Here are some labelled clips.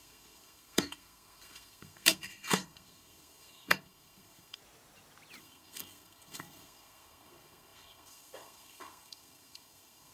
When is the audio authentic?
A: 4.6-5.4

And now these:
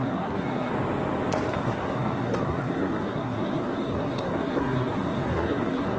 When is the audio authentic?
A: 0.7-1.5

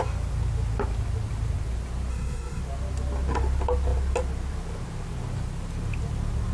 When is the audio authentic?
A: 0.0-2.1; 2.6-6.5

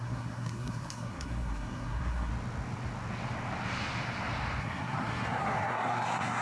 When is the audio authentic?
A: 2.3-4.6